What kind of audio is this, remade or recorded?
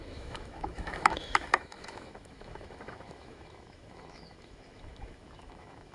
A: remade